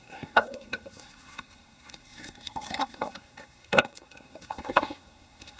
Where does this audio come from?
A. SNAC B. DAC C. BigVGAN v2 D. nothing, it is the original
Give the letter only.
A